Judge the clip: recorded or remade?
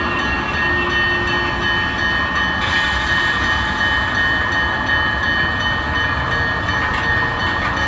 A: recorded